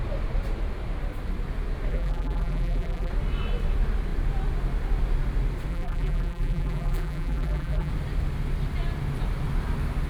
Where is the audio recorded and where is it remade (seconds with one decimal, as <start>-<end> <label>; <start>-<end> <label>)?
0.0-1.9 recorded; 1.9-3.1 remade; 3.1-5.7 recorded; 5.7-7.9 remade; 7.9-10.1 recorded